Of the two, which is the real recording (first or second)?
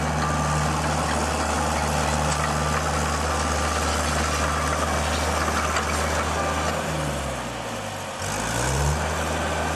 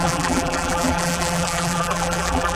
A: first